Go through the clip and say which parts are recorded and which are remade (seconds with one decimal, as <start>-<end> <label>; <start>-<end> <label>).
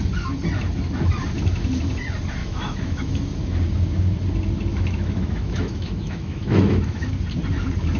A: 0.0-2.4 recorded; 2.4-3.2 remade; 3.2-4.7 recorded; 4.7-7.1 remade; 7.1-8.0 recorded